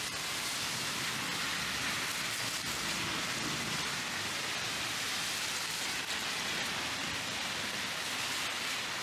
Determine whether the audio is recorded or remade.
recorded